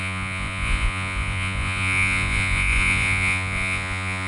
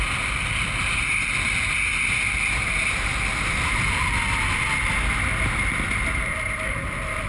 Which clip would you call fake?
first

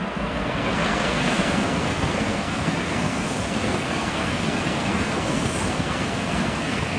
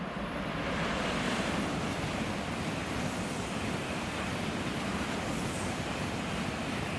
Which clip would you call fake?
first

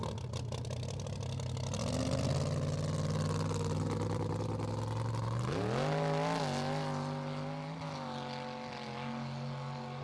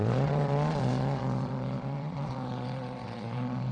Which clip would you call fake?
second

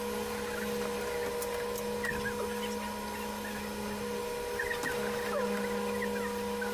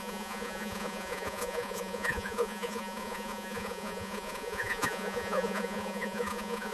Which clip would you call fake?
second